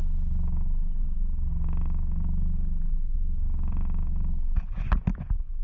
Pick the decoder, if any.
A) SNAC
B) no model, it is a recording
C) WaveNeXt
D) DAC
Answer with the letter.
B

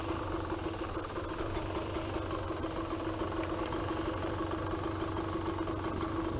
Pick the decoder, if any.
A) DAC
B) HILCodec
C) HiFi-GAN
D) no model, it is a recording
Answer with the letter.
D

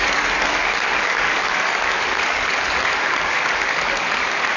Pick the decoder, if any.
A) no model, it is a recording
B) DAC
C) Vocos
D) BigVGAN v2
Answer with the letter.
B